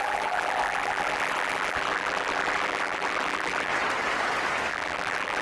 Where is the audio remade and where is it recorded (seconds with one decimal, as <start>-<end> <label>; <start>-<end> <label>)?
0.0-3.7 remade; 3.7-4.7 recorded; 4.7-5.4 remade